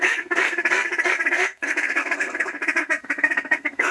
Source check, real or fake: fake